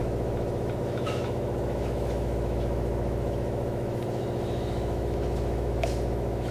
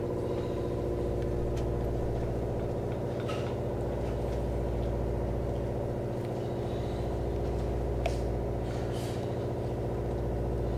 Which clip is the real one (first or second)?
second